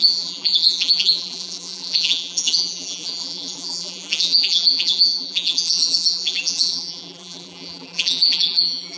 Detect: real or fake fake